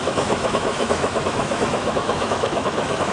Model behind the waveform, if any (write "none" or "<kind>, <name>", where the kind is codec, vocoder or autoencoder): autoencoder, DAC-VAE